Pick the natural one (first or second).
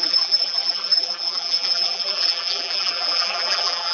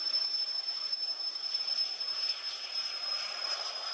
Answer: second